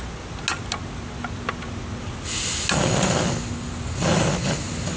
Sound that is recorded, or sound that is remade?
recorded